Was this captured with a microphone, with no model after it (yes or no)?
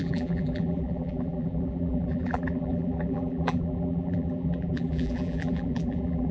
no